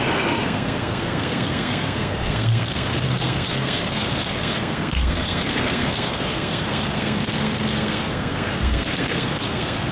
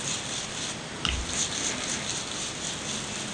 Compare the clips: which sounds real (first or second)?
second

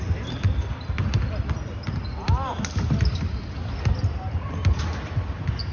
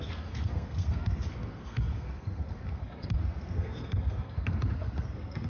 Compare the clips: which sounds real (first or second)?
first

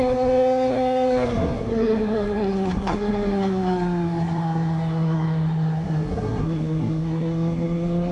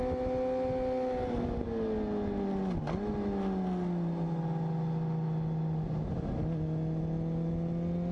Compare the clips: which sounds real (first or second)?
second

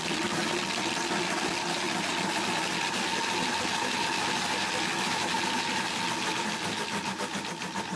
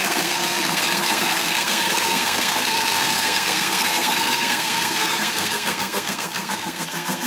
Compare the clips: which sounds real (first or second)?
first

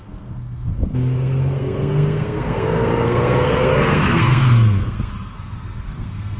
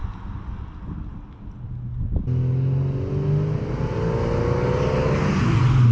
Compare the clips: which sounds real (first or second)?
second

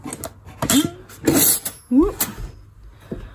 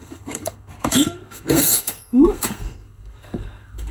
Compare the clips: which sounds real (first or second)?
first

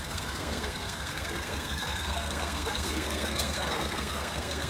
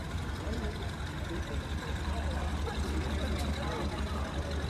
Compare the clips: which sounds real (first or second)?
second